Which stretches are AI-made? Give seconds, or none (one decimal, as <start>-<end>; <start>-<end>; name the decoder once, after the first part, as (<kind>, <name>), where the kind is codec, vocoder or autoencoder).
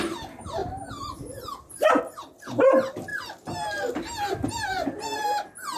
0.6-2.0 (vocoder, BigVGAN v2)